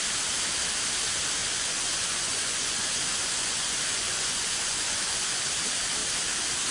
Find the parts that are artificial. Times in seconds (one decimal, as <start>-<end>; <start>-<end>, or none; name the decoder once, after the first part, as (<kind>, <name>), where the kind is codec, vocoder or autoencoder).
1.4-5.4 (vocoder, Vocos)